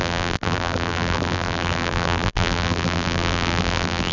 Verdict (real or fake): fake